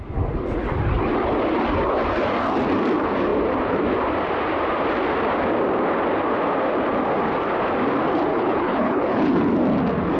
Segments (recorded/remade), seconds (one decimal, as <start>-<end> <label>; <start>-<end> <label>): 0.0-8.3 recorded; 8.3-9.4 remade; 9.4-10.2 recorded